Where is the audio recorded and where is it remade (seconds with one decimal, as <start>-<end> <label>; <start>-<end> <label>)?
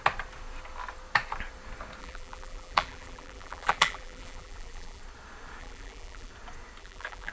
0.0-2.0 recorded; 2.0-5.0 remade; 5.0-5.6 recorded; 5.6-6.3 remade; 6.3-6.8 recorded; 6.8-7.3 remade